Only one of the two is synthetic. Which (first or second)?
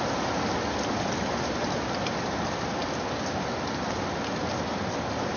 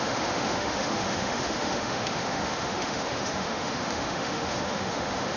second